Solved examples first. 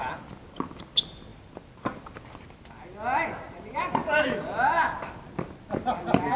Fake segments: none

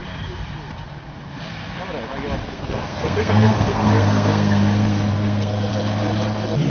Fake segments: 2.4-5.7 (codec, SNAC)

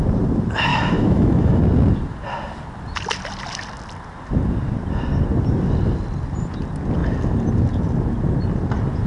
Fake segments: 0.7-1.6 (autoencoder, DAC-VAE)

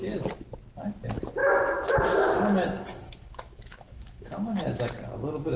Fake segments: 1.4-4.8 (autoencoder, DAC-VAE)